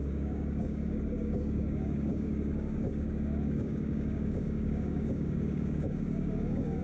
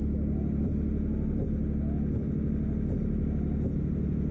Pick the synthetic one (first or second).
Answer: first